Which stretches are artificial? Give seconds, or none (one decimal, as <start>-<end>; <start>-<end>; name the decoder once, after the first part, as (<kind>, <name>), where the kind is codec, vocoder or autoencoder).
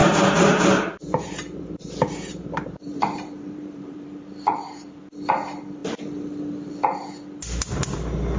0.0-5.0 (vocoder, BigVGAN v2)